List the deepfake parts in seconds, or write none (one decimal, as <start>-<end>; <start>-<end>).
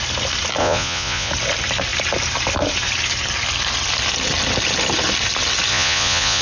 0.6-1.3; 5.7-6.4